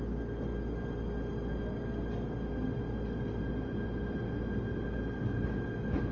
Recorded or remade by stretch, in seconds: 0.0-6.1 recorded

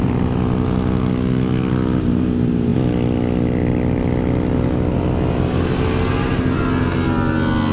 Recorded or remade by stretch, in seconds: 0.0-7.7 recorded

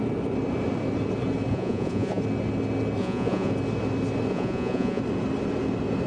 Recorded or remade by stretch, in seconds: 0.0-1.5 recorded; 1.5-2.2 remade; 2.2-3.0 recorded; 3.0-3.5 remade; 3.5-4.3 recorded; 4.3-5.0 remade; 5.0-6.1 recorded

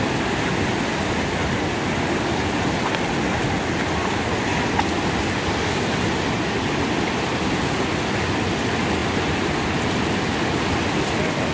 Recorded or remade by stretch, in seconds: 0.0-9.0 recorded; 9.0-9.5 remade; 9.5-11.5 recorded

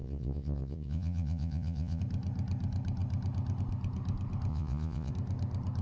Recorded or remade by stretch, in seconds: 0.0-2.0 remade; 2.0-4.5 recorded; 4.5-5.1 remade; 5.1-5.8 recorded